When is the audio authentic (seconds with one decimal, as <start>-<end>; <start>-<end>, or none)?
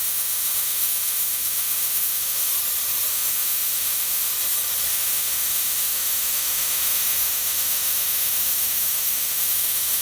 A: 2.5-3.1; 4.3-4.9